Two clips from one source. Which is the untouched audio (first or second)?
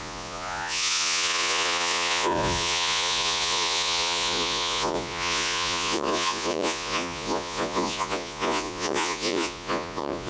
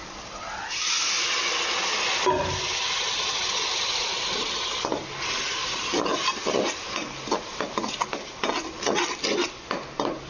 second